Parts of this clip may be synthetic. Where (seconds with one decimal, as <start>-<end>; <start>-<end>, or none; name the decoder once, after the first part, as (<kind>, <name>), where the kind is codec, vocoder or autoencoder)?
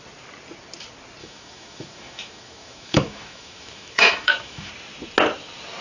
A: 1.2-4.7 (autoencoder, DAC-VAE)